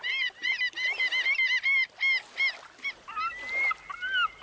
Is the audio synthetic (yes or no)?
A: no